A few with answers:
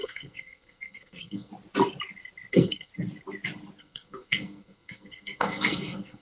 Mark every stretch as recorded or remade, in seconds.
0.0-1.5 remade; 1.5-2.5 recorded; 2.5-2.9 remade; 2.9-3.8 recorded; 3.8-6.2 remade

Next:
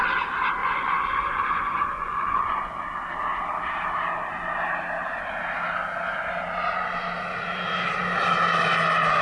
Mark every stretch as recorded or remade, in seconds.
0.0-0.6 recorded; 0.6-2.7 remade; 2.7-9.2 recorded

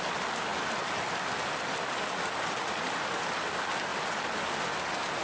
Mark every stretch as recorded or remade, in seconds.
0.0-5.2 recorded

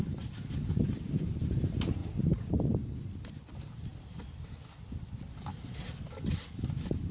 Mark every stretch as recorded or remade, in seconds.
0.0-7.1 recorded

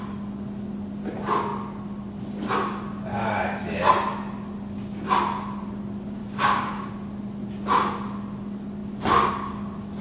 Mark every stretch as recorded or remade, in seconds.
0.0-3.1 recorded; 3.1-3.6 remade; 3.6-6.2 recorded; 6.2-6.9 remade; 6.9-10.0 recorded

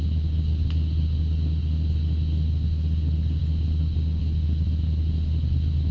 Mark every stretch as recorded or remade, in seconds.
0.0-5.9 recorded